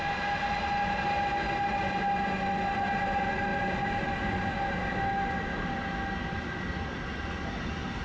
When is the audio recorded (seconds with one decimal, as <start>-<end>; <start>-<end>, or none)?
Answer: 0.0-8.0